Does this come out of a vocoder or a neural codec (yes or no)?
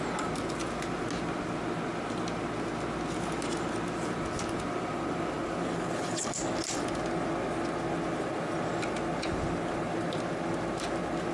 no